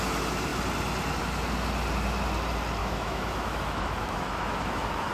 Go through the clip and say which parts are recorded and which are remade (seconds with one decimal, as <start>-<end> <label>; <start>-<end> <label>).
0.0-2.8 recorded; 2.8-5.1 remade